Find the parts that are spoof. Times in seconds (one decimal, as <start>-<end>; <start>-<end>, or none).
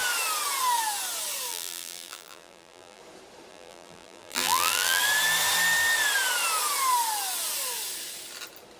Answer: 1.5-3.0; 3.5-5.0